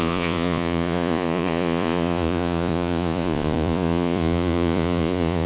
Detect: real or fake fake